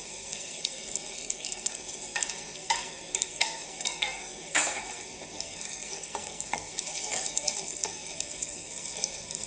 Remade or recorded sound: remade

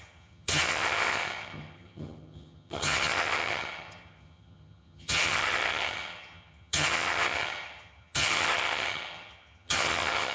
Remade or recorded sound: remade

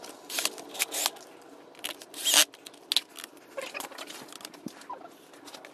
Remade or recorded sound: recorded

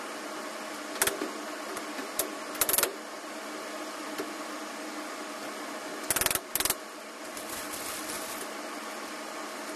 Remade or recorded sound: recorded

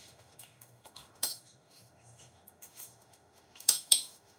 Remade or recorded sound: remade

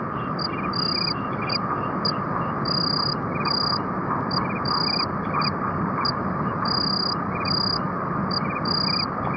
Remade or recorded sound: recorded